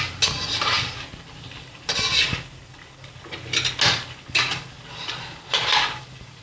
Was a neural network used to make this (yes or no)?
no